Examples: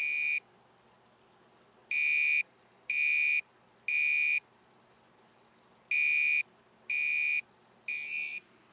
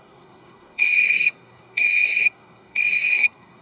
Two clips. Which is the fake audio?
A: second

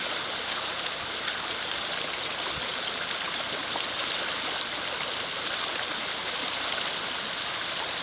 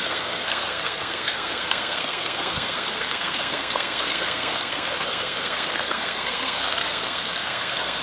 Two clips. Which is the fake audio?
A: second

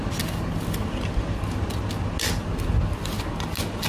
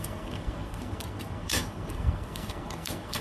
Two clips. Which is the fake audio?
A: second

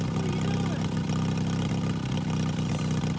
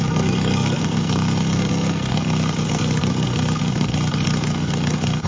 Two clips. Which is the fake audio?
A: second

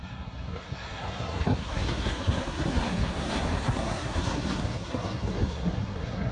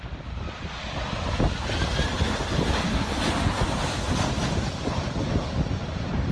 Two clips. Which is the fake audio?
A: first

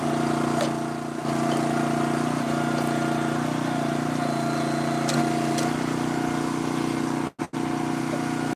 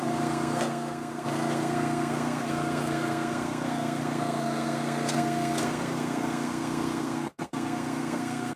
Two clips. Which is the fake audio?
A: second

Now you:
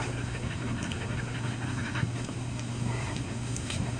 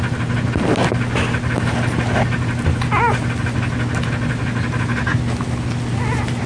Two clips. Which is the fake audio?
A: first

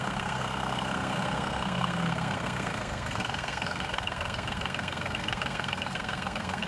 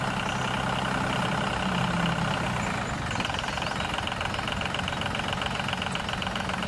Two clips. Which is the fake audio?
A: first